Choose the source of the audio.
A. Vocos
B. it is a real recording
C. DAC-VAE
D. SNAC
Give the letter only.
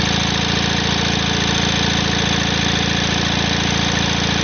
B